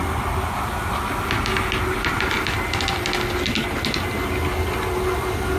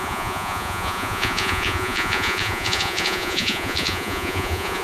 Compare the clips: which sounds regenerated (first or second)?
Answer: second